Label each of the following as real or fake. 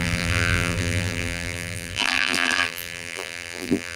fake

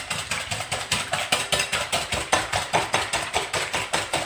fake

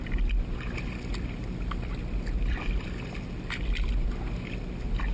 real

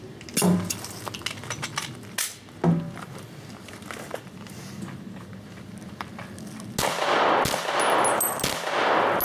real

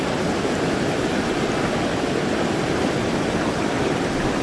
fake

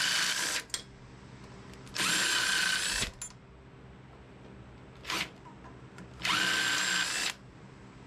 real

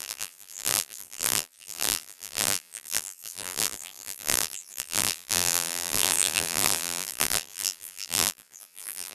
fake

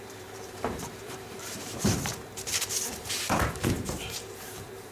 fake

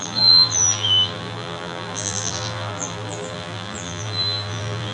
fake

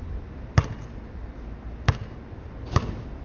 real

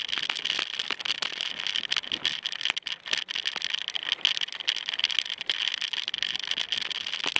real